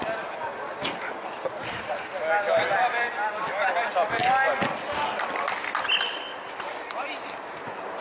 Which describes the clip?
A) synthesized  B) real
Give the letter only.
B